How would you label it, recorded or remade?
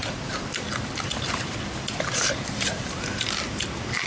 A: remade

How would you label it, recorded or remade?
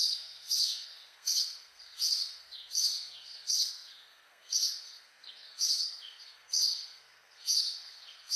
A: remade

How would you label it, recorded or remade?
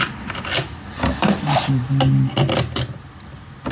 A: recorded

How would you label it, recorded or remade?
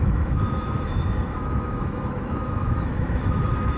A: remade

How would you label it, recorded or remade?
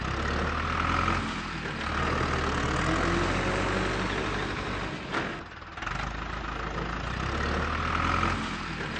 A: recorded